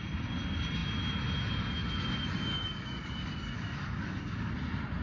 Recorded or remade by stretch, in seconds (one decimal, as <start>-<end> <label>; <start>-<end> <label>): 0.0-2.5 recorded; 2.5-4.5 remade; 4.5-5.0 recorded